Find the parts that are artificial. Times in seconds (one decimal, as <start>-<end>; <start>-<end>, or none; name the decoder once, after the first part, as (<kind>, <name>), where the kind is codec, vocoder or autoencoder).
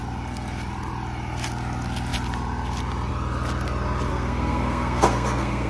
4.1-5.7 (codec, SNAC)